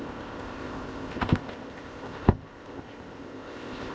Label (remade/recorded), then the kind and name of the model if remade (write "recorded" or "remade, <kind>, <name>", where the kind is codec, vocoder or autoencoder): remade, codec, ZipCodec